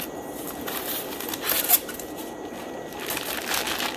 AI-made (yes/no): no